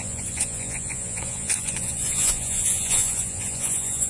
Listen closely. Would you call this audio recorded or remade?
remade